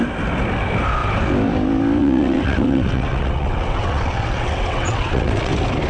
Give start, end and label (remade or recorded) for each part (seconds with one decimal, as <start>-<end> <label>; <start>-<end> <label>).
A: 0.0-2.0 recorded; 2.0-5.5 remade; 5.5-5.9 recorded